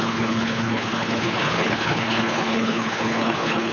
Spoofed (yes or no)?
yes